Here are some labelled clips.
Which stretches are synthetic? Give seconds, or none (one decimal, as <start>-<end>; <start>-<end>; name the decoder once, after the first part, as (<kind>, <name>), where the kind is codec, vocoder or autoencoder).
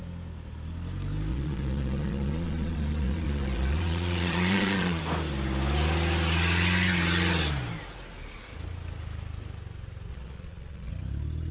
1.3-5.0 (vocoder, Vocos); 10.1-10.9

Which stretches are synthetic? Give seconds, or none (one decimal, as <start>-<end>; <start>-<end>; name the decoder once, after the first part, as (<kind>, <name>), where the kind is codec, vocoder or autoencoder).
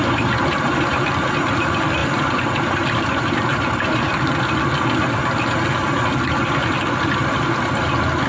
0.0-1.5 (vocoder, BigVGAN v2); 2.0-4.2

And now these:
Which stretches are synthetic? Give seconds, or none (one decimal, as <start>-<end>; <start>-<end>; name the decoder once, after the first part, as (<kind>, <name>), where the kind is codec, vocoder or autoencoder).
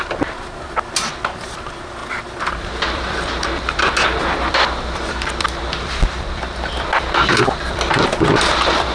none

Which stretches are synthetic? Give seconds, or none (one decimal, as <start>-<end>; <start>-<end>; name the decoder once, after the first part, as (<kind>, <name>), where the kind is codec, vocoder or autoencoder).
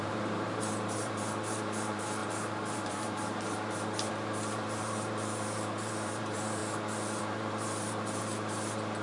0.0-6.6 (vocoder, BigVGAN v2); 7.2-9.0